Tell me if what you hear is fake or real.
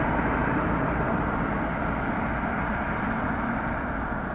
real